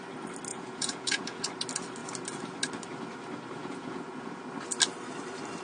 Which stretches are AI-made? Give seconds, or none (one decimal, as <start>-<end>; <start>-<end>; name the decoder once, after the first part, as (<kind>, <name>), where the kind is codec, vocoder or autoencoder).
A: 0.5-1.4 (vocoder, Vocos); 3.6-4.4